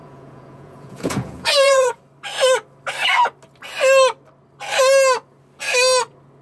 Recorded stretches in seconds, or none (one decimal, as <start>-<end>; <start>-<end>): 2.0-6.4

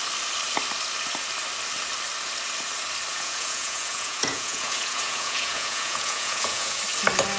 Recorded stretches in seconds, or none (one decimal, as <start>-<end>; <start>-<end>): 0.0-3.1; 6.8-7.4

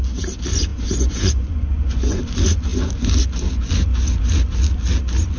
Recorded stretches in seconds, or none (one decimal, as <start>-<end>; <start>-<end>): 0.0-0.7; 2.2-5.4